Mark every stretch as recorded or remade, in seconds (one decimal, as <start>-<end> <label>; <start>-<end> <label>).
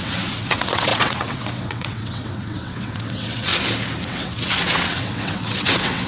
0.0-3.5 remade; 3.5-4.0 recorded; 4.0-6.1 remade